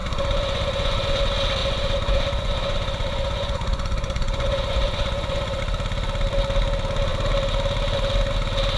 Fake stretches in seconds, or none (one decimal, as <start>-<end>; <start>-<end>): 0.0-1.2; 1.6-5.6